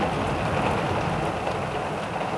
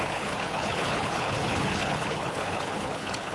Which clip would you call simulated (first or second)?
second